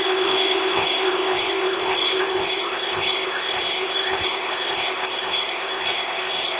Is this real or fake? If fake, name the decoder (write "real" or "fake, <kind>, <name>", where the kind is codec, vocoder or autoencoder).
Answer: fake, codec, ZipCodec